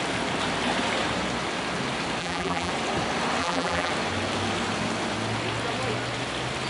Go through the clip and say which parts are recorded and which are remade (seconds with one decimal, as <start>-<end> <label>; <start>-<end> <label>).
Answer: 0.0-2.2 recorded; 2.2-2.7 remade; 2.7-3.4 recorded; 3.4-3.9 remade; 3.9-6.7 recorded